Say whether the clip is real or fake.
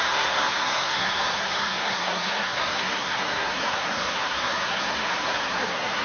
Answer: fake